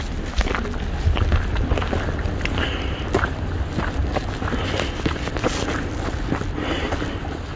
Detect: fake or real real